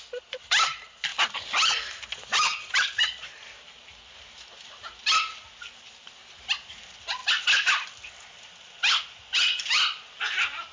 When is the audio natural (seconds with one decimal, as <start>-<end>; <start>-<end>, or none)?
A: 0.0-10.7